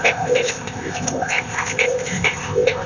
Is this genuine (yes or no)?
no